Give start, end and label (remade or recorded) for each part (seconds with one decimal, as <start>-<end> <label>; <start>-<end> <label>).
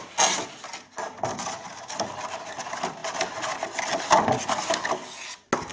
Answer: 0.0-5.7 recorded